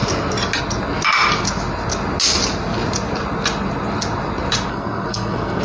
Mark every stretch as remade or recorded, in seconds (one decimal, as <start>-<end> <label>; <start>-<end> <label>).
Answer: 0.0-4.7 recorded; 4.7-5.6 remade